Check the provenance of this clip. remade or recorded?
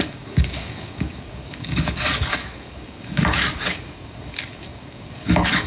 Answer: remade